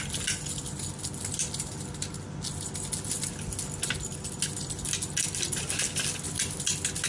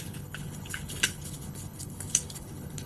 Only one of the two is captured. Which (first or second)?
first